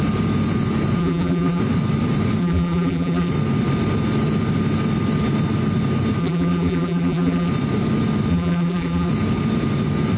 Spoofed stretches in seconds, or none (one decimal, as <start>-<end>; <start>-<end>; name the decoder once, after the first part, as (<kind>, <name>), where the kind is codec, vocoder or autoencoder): 1.0-1.6 (vocoder, BigVGAN v2); 2.4-3.3; 6.2-7.5; 8.3-9.1